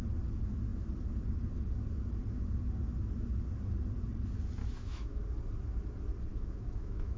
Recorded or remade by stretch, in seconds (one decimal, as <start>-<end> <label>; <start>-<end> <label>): 0.0-4.6 recorded; 4.6-5.2 remade; 5.2-6.3 recorded; 6.3-7.2 remade